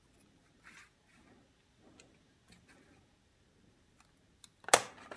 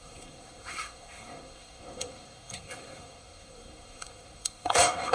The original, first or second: first